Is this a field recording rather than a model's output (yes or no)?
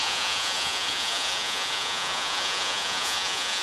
no